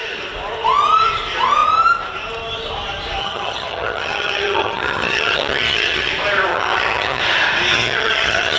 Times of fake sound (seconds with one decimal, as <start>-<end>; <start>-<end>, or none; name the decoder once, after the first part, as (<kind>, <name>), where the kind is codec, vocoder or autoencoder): 3.2-6.1 (vocoder, HiFi-GAN); 6.5-7.2; 7.7-8.6